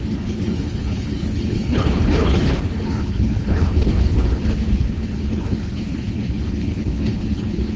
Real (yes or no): no